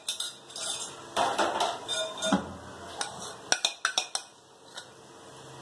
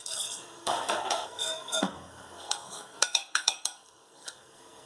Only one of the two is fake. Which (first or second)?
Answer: second